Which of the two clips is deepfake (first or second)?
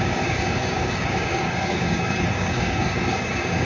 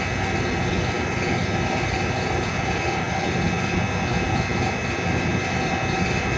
first